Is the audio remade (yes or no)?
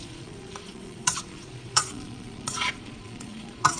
yes